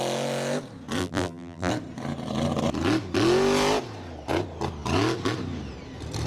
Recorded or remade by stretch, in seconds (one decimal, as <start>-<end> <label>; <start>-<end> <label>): 0.0-1.0 recorded; 1.0-1.7 remade; 1.7-6.3 recorded